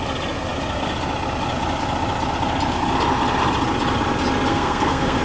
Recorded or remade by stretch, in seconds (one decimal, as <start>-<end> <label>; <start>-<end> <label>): 0.0-4.5 recorded; 4.5-5.2 remade